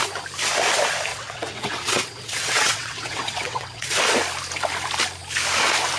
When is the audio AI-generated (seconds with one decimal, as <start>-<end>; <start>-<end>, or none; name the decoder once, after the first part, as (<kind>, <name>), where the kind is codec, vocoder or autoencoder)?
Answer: 1.1-4.0 (vocoder, WaveNeXt)